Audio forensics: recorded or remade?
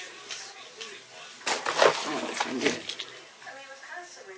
recorded